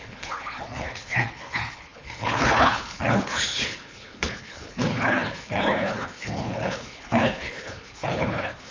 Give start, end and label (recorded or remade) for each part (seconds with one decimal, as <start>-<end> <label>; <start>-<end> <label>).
0.0-8.7 remade